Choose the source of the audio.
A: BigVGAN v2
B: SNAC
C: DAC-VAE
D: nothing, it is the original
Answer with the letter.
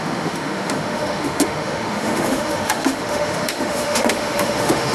C